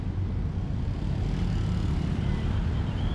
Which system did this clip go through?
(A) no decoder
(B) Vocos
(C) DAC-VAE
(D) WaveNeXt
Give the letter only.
A